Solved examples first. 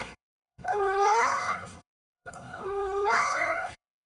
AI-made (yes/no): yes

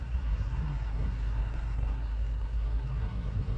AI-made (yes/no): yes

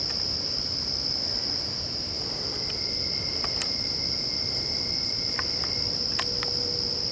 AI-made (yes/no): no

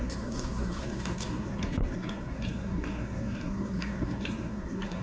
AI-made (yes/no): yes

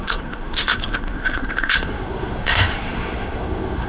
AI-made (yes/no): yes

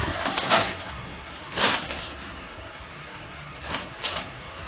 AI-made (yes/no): yes